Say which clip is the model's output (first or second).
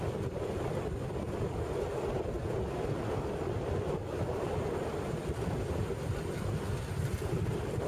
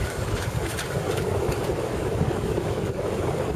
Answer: second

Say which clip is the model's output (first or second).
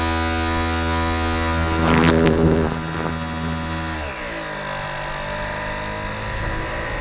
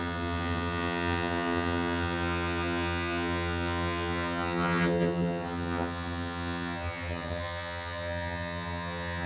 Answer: second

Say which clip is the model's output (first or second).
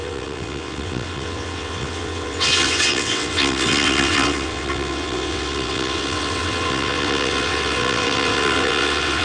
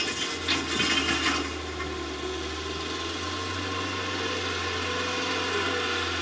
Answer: first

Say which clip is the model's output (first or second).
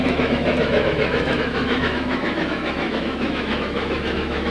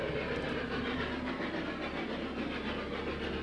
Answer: first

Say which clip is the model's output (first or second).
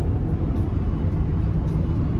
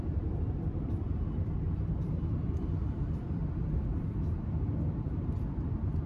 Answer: second